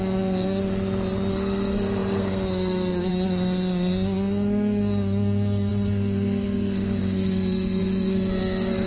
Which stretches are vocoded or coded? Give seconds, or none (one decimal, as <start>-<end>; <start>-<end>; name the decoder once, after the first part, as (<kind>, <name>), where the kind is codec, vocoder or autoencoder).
0.0-0.6 (codec, SNAC); 1.3-8.9